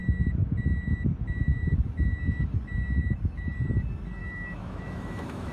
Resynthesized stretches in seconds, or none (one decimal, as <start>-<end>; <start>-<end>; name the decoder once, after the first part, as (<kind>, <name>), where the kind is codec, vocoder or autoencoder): 4.2-5.5 (autoencoder, DAC-VAE)